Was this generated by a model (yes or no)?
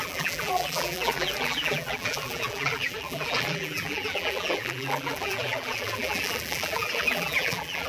yes